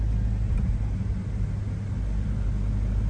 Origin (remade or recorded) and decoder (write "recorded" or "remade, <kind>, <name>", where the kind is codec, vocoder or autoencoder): recorded